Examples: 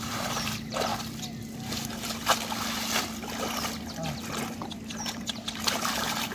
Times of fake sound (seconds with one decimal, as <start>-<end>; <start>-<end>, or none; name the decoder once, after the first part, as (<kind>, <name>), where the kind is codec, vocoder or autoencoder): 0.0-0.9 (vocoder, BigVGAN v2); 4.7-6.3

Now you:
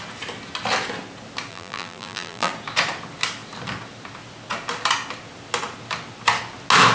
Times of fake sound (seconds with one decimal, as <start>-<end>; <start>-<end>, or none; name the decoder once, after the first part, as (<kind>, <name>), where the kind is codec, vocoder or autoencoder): 1.5-2.5 (vocoder, BigVGAN v2)

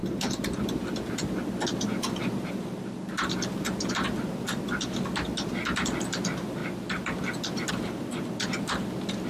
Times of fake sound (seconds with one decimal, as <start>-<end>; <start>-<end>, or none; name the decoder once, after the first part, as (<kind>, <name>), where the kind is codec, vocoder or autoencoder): none

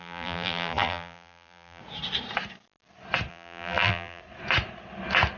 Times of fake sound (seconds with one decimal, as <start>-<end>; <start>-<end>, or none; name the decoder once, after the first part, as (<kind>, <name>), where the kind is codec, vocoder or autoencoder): 0.0-1.8 (vocoder, BigVGAN v2); 3.3-4.2

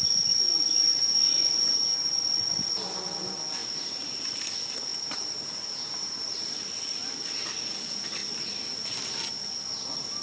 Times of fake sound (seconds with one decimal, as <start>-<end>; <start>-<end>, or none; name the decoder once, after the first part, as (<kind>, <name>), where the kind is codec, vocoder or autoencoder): 3.6-4.2 (vocoder, BigVGAN v2); 4.9-6.4